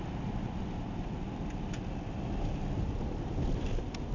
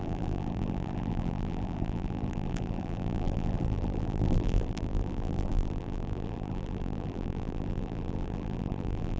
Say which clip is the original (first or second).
first